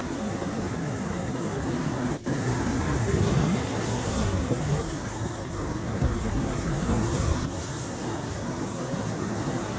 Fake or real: fake